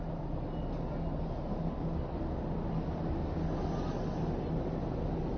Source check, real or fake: real